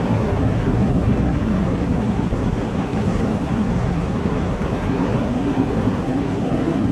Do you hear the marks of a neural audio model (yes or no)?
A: yes